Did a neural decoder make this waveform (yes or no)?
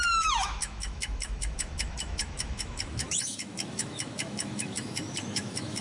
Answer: yes